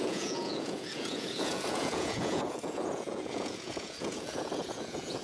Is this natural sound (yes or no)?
no